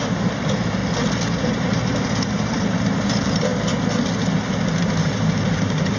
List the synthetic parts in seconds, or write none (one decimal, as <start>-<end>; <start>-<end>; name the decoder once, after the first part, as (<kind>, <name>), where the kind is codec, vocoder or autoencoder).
0.0-0.8 (vocoder, BigVGAN v2); 1.4-3.5; 4.8-6.0